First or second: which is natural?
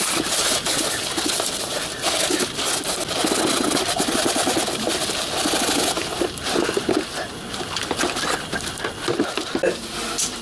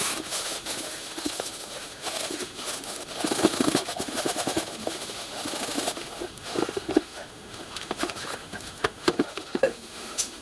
first